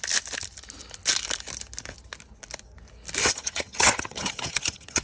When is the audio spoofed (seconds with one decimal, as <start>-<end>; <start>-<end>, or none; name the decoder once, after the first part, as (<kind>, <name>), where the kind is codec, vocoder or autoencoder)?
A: 3.2-5.0 (vocoder, HiFi-GAN)